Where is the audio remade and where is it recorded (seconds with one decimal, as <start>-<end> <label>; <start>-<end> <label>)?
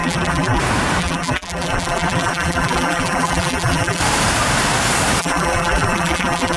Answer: 0.0-0.6 remade; 0.6-1.0 recorded; 1.0-4.0 remade; 4.0-5.2 recorded; 5.2-6.6 remade